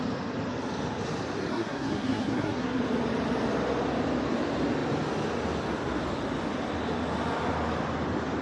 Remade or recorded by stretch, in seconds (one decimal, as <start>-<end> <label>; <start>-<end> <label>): 0.0-1.5 recorded; 1.5-2.8 remade; 2.8-8.4 recorded